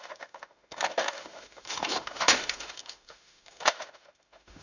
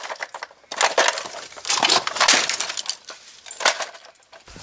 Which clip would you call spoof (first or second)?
first